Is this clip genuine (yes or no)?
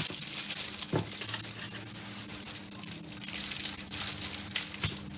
yes